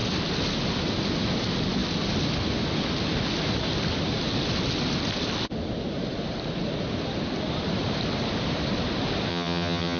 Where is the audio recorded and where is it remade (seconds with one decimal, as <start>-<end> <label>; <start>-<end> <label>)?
0.0-9.3 recorded; 9.3-10.0 remade